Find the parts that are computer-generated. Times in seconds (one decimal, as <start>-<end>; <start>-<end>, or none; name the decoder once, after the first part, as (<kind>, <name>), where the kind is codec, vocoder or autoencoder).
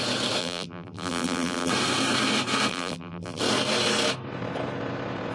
0.4-1.7 (vocoder, BigVGAN v2); 2.7-3.4